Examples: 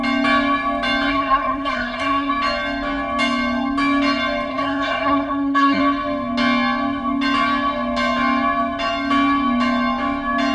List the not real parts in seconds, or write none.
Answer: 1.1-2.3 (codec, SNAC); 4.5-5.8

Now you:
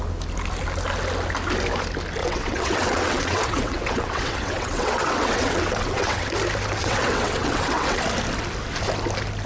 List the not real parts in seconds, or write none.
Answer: 2.2-6.3 (vocoder, WaveNeXt); 6.8-8.0

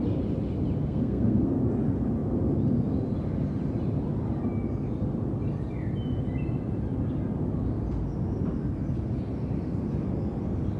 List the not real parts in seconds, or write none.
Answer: 0.8-1.6 (codec, SNAC)

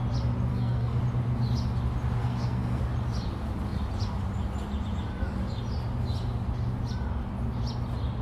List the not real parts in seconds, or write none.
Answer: 0.5-1.0 (codec, SNAC); 2.2-2.8

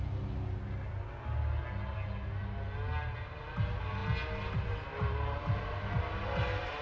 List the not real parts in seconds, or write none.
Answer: none

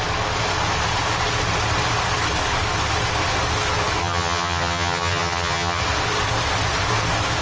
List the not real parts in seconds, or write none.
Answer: 4.0-5.8 (vocoder, HiFi-GAN)

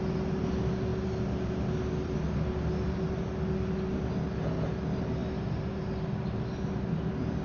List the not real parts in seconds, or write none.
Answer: none

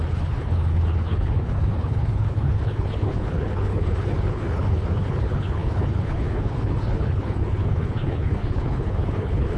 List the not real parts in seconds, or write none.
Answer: 0.0-9.6 (codec, HILCodec)